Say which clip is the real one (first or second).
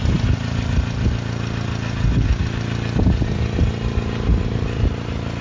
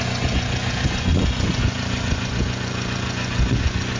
first